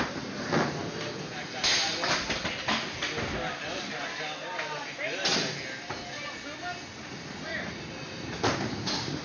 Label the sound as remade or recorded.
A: recorded